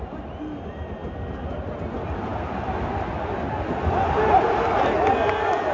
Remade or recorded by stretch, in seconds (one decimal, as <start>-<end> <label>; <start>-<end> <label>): 0.0-5.7 recorded